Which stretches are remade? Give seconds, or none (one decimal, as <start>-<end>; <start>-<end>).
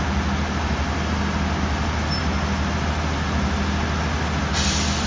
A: none